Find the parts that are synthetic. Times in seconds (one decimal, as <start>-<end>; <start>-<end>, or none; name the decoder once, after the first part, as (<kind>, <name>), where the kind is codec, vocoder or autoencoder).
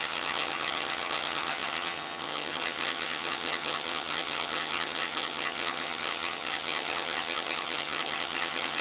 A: 0.0-8.8 (vocoder, HiFi-GAN)